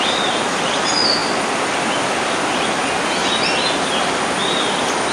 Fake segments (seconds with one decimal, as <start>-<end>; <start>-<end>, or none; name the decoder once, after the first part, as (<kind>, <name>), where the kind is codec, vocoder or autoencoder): none